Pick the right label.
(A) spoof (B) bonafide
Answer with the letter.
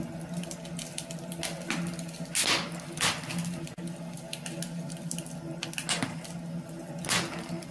B